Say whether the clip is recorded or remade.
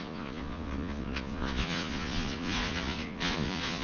remade